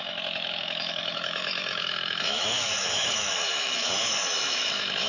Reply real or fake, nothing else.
fake